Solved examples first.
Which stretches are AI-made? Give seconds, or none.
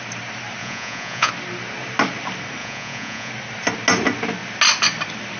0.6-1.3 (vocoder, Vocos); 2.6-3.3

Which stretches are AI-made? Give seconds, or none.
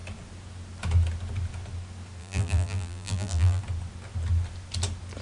2.2-3.6 (vocoder, BigVGAN v2)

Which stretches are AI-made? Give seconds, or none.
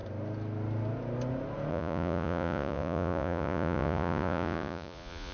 1.7-5.3 (vocoder, Vocos)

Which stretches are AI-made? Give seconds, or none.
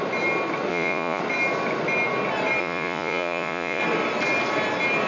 0.7-1.2 (vocoder, Vocos); 2.6-3.8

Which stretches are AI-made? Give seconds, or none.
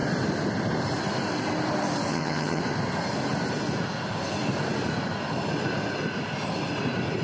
2.1-2.6 (vocoder, HiFi-GAN)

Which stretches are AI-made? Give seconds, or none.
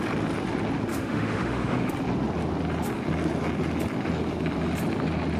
0.9-1.9 (autoencoder, DAC-VAE)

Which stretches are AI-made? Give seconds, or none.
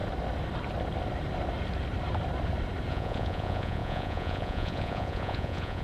2.9-5.8 (vocoder, Vocos)